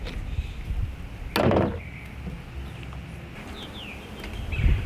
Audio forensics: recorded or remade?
recorded